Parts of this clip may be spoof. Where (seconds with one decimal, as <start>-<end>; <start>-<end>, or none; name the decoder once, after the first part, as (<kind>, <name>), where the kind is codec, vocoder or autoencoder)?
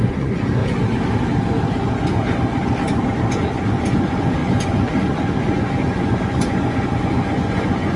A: 0.0-0.6 (vocoder, Vocos); 3.3-8.0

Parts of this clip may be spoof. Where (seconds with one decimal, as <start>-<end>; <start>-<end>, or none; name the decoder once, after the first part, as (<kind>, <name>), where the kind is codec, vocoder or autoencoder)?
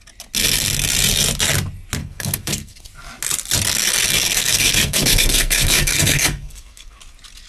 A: 2.0-2.8 (codec, SNAC); 4.3-7.0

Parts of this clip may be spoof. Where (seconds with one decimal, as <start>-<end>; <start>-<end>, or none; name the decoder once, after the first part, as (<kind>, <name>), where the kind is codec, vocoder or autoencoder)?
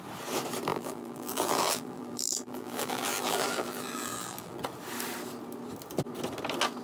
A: 0.7-4.6 (vocoder, BigVGAN v2)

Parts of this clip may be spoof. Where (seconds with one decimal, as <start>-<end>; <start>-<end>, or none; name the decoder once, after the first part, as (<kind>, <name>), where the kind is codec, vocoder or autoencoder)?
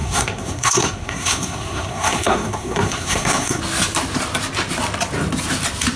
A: 0.0-3.6 (codec, SNAC)